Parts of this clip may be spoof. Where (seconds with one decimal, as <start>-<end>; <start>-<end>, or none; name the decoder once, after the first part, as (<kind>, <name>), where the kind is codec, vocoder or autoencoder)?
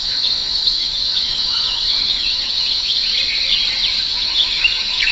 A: 0.0-3.1 (autoencoder, DAC-VAE); 4.0-5.1